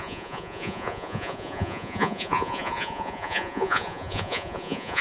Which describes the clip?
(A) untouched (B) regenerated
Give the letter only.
B